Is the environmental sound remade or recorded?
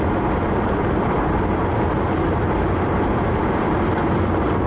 recorded